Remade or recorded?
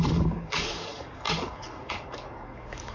remade